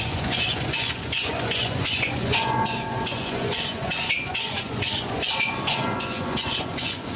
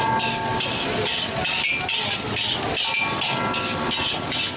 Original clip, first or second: second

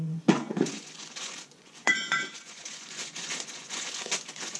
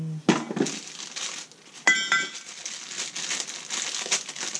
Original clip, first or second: second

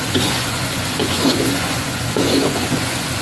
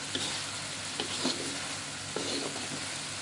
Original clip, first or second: second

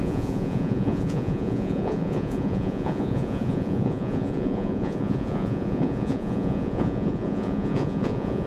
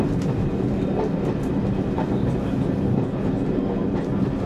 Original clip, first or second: second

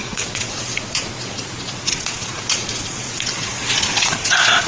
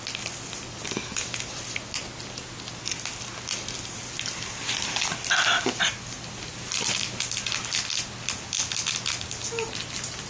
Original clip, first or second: second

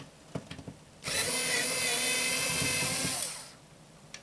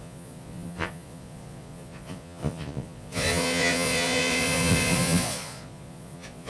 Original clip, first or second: first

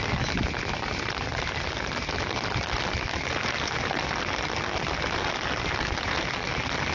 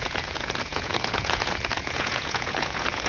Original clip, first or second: first